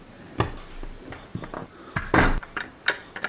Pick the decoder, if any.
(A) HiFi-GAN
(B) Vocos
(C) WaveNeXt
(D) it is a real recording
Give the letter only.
D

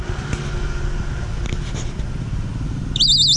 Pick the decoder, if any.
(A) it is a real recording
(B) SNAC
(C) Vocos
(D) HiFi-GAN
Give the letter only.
A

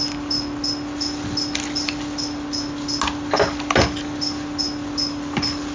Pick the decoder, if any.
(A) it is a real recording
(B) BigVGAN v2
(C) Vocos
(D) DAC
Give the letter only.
A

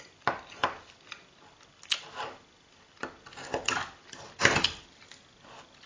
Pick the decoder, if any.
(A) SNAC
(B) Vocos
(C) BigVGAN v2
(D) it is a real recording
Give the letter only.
D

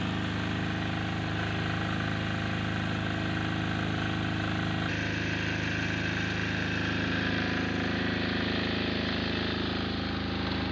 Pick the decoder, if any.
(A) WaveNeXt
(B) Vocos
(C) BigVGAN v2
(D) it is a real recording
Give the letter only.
D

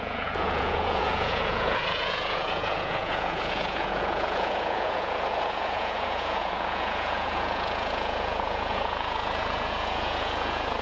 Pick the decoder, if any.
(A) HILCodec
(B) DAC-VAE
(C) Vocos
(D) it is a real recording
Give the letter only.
C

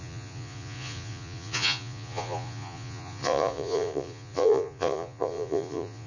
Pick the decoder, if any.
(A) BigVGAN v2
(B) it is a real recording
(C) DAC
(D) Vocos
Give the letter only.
D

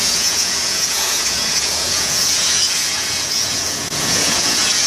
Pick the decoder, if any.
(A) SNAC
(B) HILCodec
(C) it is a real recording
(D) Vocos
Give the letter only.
D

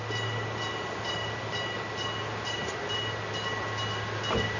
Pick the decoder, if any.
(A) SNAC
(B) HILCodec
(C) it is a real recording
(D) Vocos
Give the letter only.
C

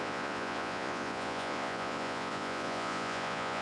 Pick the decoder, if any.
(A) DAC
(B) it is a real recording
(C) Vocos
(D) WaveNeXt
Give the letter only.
C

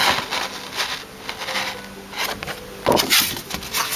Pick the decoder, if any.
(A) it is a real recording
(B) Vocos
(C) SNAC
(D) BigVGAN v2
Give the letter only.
A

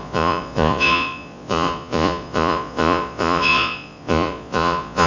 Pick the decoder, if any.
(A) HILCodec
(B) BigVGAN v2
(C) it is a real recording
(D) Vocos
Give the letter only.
D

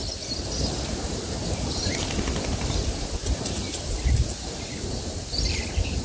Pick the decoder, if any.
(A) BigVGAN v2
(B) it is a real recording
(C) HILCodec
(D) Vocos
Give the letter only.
B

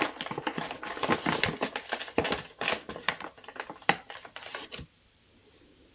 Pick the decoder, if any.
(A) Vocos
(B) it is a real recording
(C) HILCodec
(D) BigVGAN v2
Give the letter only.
B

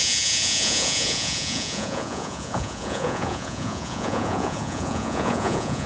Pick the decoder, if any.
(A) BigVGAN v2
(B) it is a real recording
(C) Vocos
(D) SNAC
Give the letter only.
C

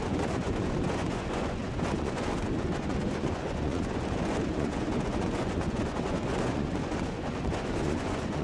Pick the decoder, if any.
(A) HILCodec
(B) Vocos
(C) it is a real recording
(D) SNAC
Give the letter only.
B